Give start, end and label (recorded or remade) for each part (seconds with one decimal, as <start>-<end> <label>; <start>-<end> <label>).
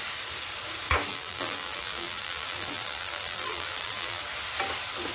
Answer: 0.0-1.1 recorded; 1.1-4.2 remade; 4.2-5.1 recorded